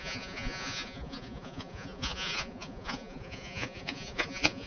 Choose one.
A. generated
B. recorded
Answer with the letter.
A